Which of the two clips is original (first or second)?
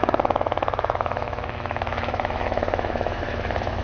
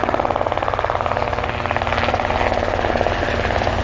second